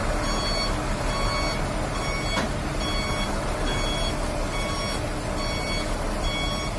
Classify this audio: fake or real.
real